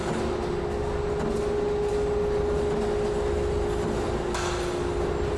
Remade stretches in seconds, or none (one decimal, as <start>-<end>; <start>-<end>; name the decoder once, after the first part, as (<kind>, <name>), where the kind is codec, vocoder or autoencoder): none